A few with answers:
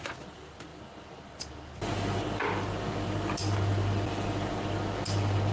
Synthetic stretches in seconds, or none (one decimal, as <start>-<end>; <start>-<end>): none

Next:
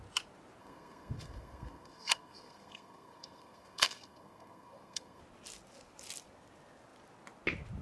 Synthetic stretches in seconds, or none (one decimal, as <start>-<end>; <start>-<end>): 0.6-5.2

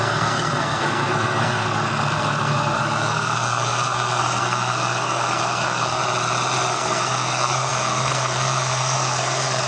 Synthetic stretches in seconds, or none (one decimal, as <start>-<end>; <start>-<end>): 0.0-6.0; 6.7-9.7

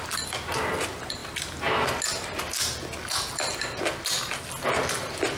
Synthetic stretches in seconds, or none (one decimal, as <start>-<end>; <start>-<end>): none

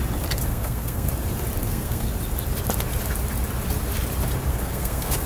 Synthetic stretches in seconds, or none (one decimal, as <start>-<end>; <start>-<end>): 0.5-1.1; 1.6-2.1; 4.5-5.3

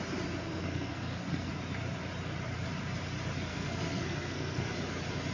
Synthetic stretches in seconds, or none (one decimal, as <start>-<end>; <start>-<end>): 0.4-1.5; 3.5-4.7

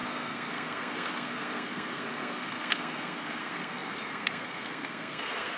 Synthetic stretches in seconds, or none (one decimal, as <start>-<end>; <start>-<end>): 0.0-5.6

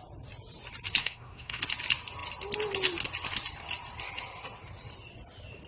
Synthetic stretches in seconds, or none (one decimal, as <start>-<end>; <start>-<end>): 1.0-1.6